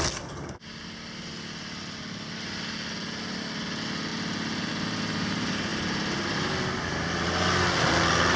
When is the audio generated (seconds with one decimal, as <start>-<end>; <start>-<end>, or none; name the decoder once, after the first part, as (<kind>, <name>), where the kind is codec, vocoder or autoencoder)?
none